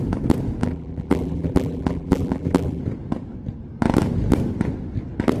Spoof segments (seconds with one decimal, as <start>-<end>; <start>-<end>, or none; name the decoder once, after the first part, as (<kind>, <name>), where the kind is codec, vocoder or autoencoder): 0.6-2.8 (vocoder, BigVGAN v2)